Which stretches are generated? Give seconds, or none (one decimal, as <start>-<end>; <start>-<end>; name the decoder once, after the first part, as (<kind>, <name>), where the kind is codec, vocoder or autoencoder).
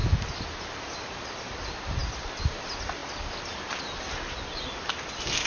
none